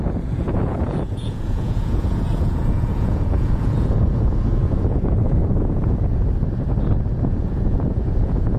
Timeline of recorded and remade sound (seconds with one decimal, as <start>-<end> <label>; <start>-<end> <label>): 0.0-6.1 remade; 6.1-7.1 recorded; 7.1-8.6 remade